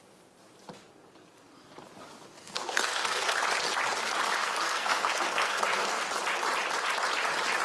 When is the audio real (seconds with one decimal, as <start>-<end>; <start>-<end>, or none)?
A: 0.0-2.4; 3.4-4.4; 6.1-7.6